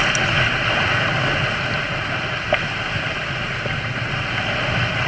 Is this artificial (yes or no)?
no